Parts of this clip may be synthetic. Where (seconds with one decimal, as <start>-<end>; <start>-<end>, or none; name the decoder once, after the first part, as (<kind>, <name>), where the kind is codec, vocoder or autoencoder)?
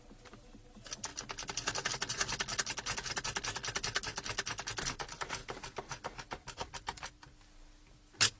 none